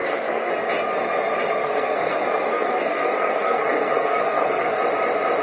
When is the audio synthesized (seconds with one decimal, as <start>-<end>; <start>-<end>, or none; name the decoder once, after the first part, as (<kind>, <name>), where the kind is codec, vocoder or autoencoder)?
0.0-0.5 (codec, SNAC); 1.6-4.8